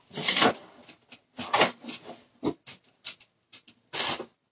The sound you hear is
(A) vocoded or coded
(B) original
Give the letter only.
B